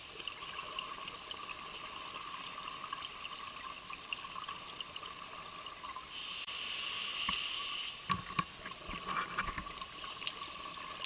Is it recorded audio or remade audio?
recorded